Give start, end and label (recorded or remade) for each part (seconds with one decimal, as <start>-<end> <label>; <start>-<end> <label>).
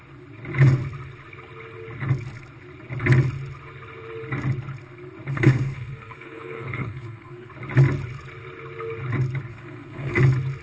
0.0-5.3 recorded; 5.3-7.5 remade; 7.5-9.5 recorded; 9.5-10.2 remade; 10.2-10.6 recorded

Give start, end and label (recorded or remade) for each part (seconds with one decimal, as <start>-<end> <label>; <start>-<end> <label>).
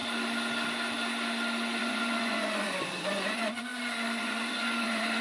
0.0-1.8 recorded; 1.8-3.7 remade; 3.7-4.2 recorded; 4.2-5.2 remade